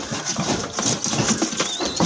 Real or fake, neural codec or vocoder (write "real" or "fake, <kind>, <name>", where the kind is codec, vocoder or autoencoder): real